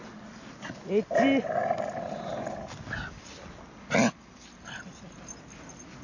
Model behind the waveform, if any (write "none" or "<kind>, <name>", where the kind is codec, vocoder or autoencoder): none